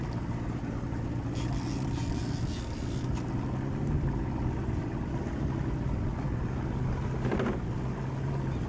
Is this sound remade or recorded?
recorded